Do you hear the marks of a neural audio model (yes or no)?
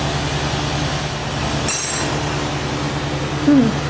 no